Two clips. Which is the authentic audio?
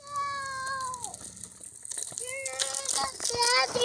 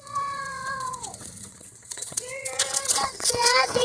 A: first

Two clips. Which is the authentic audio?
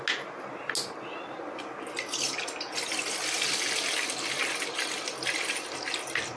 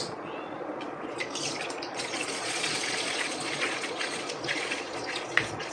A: first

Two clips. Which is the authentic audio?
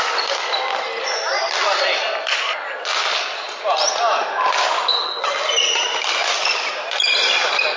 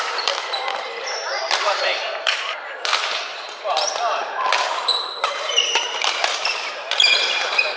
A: first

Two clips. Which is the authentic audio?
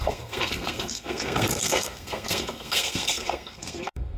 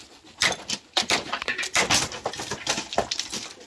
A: second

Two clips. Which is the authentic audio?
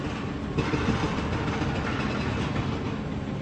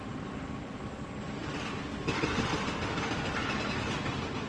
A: first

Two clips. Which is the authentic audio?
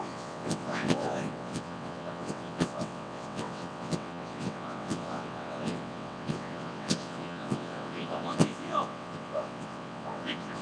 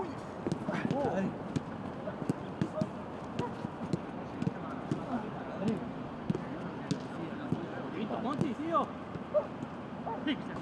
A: second